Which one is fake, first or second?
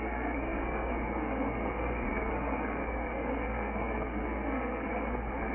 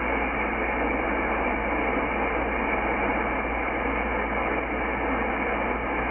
first